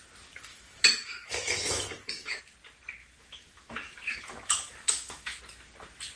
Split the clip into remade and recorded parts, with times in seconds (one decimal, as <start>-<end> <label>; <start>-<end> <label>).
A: 0.0-0.5 recorded; 0.5-2.4 remade; 2.4-3.0 recorded; 3.0-5.4 remade; 5.4-6.2 recorded